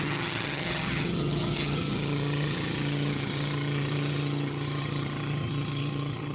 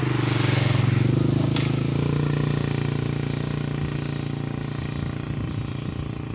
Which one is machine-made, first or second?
first